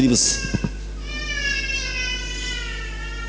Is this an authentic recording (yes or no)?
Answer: yes